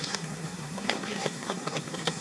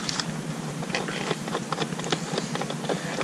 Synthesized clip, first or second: first